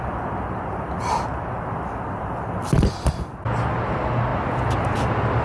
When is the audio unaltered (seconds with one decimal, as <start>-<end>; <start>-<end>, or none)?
0.0-5.4